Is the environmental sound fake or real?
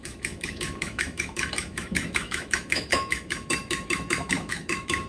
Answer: fake